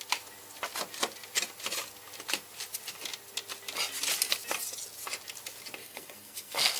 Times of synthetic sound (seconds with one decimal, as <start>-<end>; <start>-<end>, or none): 5.8-6.8